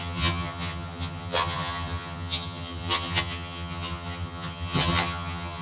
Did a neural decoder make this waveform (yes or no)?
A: yes